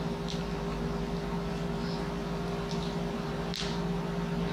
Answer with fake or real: real